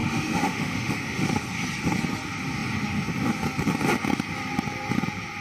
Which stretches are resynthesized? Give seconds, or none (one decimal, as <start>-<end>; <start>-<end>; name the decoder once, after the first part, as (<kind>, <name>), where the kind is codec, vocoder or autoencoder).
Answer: 0.0-1.4 (autoencoder, DAC-VAE)